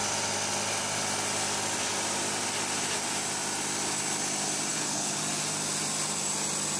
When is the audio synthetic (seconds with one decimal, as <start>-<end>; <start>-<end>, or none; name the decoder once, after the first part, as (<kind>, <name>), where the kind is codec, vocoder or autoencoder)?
4.7-5.2 (codec, HILCodec)